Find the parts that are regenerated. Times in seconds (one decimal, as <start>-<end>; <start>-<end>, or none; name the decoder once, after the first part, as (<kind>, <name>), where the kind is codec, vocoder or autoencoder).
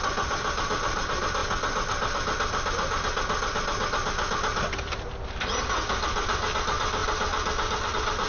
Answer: none